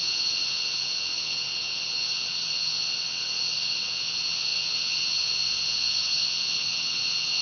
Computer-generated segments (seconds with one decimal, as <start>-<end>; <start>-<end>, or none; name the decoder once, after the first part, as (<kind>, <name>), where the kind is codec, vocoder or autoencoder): 0.0-7.4 (vocoder, WaveNeXt)